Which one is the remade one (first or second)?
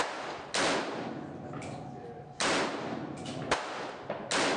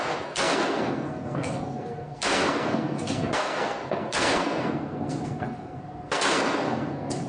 second